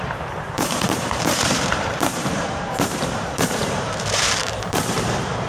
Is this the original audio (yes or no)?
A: no